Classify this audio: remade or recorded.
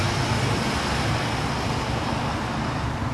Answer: recorded